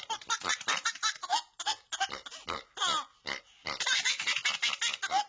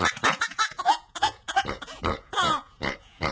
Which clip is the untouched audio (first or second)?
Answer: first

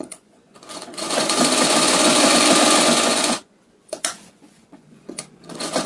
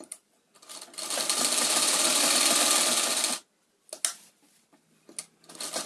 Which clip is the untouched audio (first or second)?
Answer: second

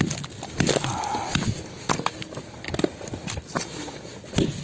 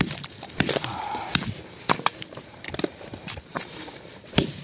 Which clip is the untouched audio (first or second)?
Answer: first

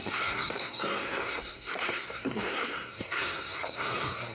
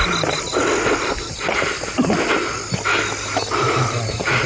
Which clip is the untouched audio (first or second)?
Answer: second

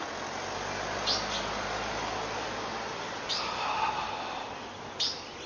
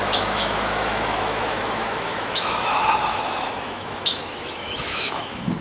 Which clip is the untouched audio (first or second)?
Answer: first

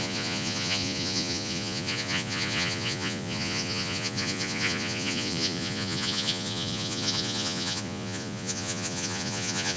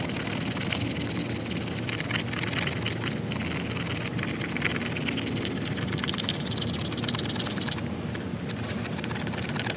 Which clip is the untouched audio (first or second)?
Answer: second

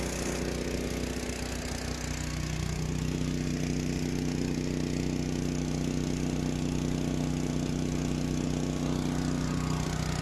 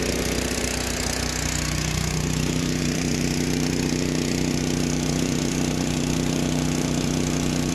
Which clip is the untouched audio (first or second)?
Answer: first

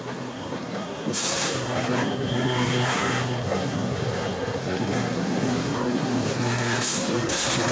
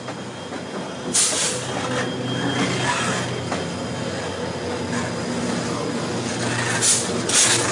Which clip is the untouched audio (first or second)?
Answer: second